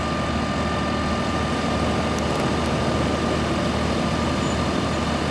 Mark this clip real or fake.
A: real